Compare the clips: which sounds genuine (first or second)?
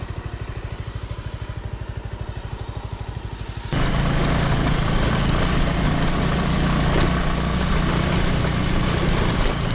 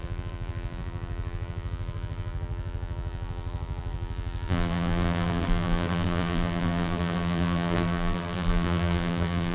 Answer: first